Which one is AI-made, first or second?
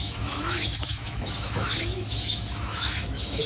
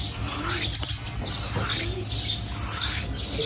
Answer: first